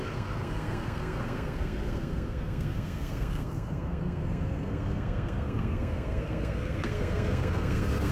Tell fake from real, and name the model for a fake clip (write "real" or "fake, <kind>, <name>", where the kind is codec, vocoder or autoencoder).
fake, codec, SNAC